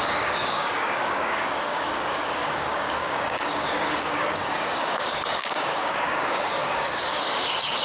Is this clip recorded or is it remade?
remade